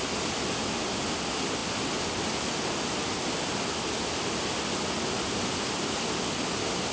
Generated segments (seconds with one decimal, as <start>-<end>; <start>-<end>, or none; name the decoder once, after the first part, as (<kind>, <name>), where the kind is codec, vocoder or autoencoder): none